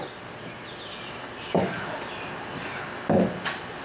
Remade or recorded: recorded